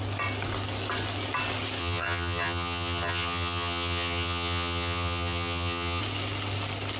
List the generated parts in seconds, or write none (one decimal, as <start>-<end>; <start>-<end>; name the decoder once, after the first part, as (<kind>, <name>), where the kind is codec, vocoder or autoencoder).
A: 1.8-6.0 (vocoder, HiFi-GAN)